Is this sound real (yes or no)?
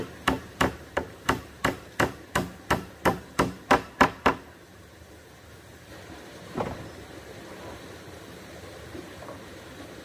no